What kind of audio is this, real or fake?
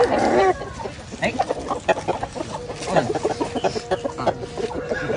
real